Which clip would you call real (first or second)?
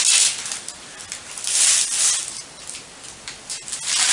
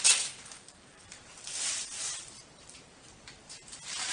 first